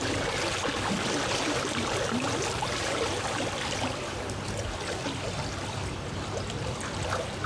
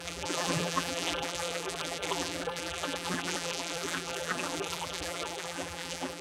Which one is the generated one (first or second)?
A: second